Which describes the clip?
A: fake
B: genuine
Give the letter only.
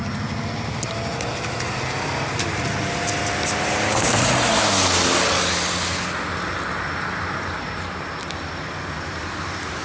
B